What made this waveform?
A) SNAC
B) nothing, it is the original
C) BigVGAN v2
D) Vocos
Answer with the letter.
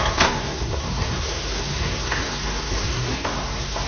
A